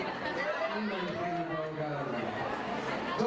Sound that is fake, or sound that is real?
real